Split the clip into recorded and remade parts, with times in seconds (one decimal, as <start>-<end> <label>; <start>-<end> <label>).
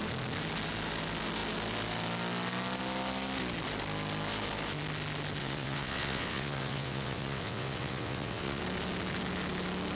0.0-5.4 recorded; 5.4-8.6 remade; 8.6-9.9 recorded